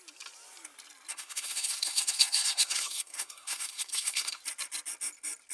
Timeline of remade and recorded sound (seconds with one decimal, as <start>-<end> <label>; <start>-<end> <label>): 0.0-1.1 recorded; 1.1-4.4 remade; 4.4-5.5 recorded